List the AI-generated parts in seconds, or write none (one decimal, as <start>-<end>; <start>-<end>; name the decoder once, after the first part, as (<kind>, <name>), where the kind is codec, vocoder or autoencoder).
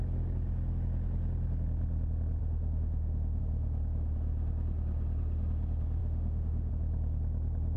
2.4-3.4 (autoencoder, DAC-VAE); 6.0-6.7